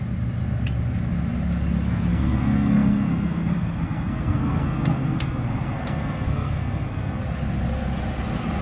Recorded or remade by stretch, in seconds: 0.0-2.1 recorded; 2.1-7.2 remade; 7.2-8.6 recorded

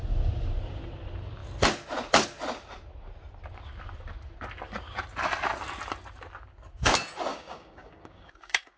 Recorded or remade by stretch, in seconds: 0.0-7.3 recorded; 7.3-8.8 remade

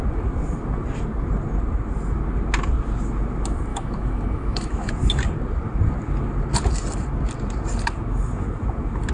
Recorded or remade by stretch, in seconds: 0.0-3.7 recorded; 3.7-4.9 remade; 4.9-9.1 recorded

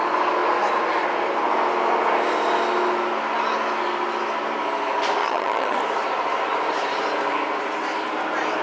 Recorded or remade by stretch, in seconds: 0.0-5.2 recorded; 5.2-5.8 remade; 5.8-8.6 recorded